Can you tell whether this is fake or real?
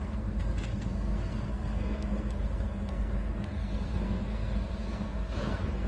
fake